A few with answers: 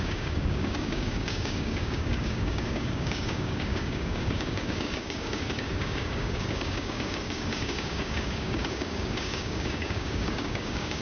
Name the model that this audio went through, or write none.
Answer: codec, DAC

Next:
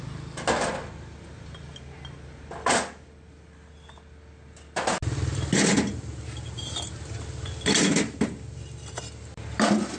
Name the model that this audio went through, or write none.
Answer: none